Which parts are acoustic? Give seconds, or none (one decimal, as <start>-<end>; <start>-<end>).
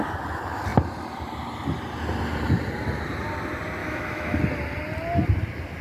0.0-3.8; 4.4-5.8